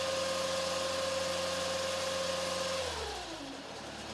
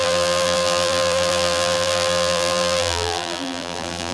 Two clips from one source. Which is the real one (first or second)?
first